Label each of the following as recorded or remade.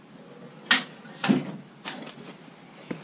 recorded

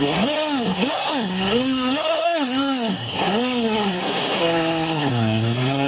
remade